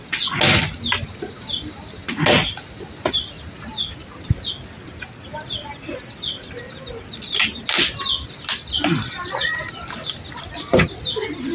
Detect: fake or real real